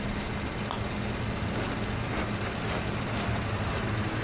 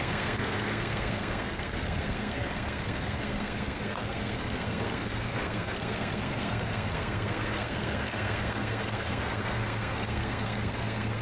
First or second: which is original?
first